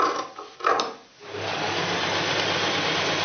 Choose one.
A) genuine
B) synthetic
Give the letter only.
A